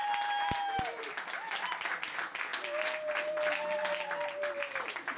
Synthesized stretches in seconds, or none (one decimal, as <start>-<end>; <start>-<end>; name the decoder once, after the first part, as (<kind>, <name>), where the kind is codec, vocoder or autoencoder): none